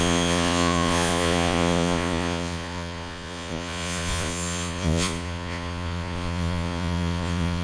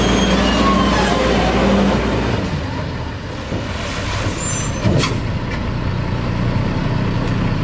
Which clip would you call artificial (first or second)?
first